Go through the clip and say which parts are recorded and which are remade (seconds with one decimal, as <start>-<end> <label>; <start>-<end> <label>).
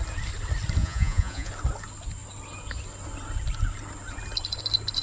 0.0-0.8 recorded; 0.8-1.5 remade; 1.5-5.0 recorded